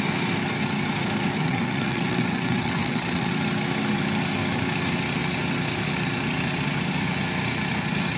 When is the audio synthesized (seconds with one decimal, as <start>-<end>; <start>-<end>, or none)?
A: 1.4-3.3

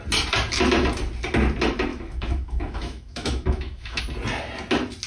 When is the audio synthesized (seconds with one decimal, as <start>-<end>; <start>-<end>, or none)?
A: 1.9-4.0

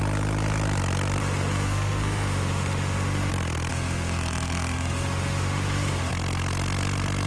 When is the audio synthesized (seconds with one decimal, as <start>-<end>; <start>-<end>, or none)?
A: 1.2-3.3; 3.7-6.1

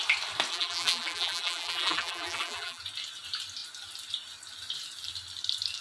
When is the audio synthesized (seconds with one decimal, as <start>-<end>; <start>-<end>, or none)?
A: 0.5-2.8

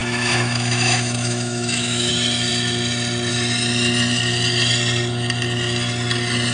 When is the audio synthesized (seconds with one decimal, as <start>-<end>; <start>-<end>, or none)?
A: 0.0-2.1

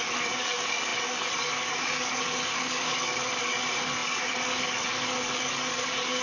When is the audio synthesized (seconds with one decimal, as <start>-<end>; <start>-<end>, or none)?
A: 0.0-6.2

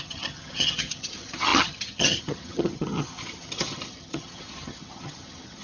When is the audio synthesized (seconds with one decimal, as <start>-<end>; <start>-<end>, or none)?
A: 0.0-5.6

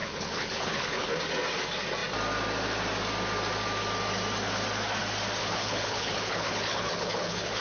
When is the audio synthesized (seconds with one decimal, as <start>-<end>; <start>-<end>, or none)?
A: 0.0-1.1; 5.4-7.6